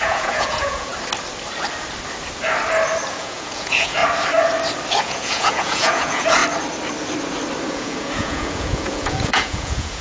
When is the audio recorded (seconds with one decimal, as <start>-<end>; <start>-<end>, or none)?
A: 0.9-3.1; 4.0-5.0; 6.4-7.7